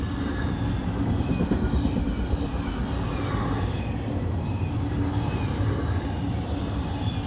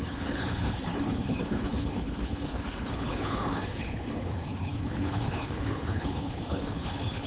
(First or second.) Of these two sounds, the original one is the first